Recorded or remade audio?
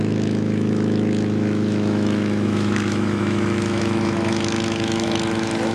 remade